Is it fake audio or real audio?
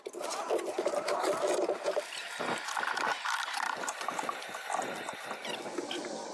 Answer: real